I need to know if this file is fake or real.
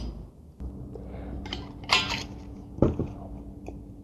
real